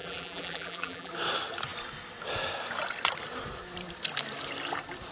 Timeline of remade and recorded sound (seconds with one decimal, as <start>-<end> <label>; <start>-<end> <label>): 0.0-1.1 remade; 1.1-5.1 recorded